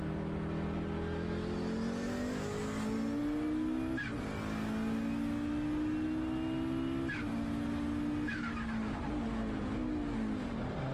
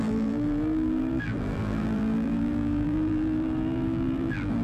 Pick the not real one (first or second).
second